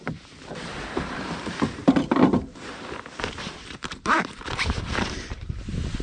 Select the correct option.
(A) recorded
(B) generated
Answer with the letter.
B